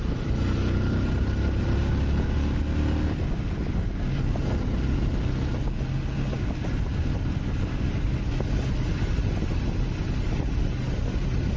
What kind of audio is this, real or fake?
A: real